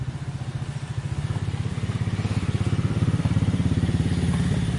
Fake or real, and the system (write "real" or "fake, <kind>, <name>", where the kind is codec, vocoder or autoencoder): fake, vocoder, BigVGAN v2